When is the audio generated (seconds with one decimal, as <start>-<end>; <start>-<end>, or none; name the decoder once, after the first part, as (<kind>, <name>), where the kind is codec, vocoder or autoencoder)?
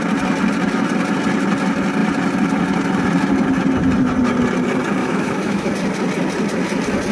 5.0-5.7 (autoencoder, DAC-VAE)